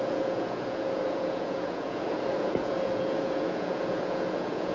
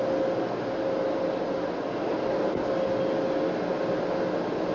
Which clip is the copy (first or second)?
first